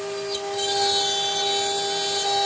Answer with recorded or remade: recorded